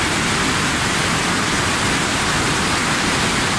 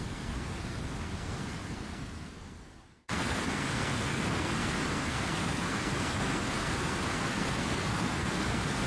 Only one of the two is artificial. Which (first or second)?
second